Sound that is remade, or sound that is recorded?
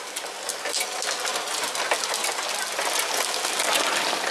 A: recorded